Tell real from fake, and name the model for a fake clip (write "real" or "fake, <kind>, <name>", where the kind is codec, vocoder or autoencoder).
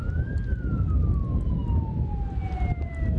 real